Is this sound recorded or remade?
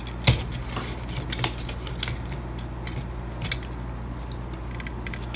recorded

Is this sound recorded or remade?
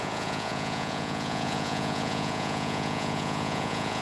remade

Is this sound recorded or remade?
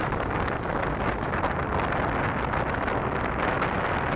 recorded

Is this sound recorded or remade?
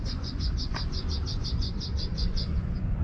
remade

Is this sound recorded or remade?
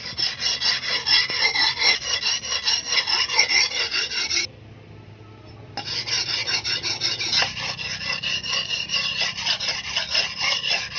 recorded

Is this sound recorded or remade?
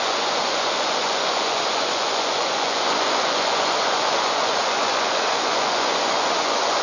remade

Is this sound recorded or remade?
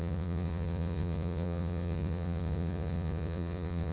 remade